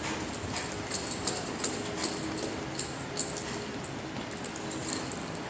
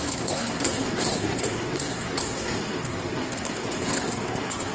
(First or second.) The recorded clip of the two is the first